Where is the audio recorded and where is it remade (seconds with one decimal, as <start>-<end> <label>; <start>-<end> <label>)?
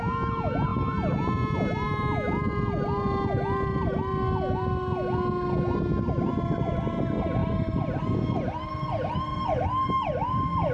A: 0.0-0.7 recorded; 0.7-3.9 remade; 3.9-10.7 recorded